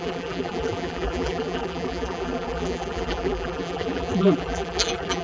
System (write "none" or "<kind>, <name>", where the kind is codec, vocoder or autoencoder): vocoder, BigVGAN v2